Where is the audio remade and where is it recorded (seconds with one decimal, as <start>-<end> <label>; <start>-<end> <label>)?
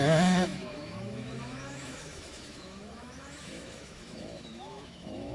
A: 0.0-5.3 remade